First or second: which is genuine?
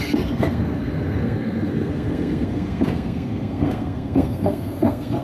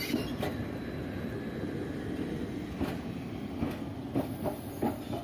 second